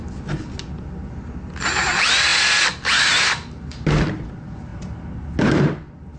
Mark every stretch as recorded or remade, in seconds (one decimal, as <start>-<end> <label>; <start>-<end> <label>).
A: 0.0-6.2 recorded